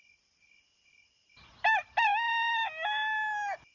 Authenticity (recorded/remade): recorded